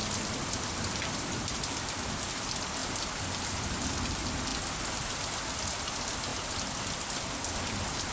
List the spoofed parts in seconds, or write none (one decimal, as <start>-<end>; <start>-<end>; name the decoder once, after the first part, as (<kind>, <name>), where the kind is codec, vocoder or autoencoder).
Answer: 0.0-2.3 (vocoder, BigVGAN v2)